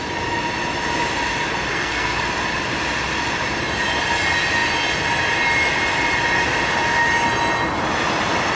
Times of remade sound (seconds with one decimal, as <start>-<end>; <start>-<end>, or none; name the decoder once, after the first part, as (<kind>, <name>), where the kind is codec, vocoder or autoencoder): 1.7-2.2 (codec, SNAC)

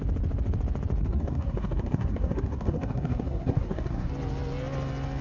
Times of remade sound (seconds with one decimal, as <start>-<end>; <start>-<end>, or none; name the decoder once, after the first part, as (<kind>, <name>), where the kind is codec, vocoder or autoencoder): 1.0-4.1 (codec, SNAC)

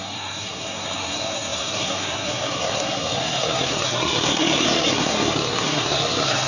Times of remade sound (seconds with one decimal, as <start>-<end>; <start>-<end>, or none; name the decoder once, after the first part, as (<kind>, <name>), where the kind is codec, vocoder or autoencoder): 0.0-6.5 (codec, SNAC)

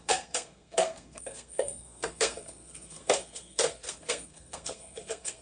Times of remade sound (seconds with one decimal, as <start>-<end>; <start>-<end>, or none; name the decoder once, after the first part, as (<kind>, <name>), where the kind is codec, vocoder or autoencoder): 0.0-5.4 (codec, SNAC)

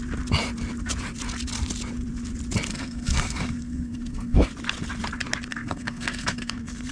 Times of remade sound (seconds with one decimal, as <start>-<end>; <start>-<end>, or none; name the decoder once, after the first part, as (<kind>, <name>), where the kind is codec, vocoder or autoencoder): 2.7-4.5 (codec, SNAC); 5.5-6.9

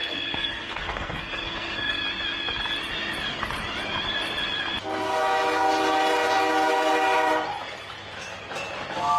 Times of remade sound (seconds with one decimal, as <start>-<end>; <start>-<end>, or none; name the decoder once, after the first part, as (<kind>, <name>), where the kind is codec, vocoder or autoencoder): 0.0-2.0 (codec, SNAC)

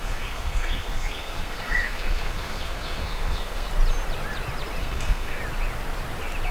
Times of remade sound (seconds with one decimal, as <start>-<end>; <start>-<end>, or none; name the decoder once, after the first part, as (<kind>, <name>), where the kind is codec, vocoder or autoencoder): 0.0-3.7 (codec, SNAC); 4.8-5.4

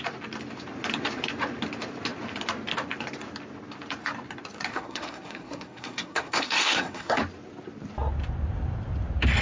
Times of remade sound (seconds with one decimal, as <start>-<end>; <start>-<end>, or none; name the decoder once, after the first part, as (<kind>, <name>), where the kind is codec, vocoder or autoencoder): 4.7-7.2 (codec, SNAC)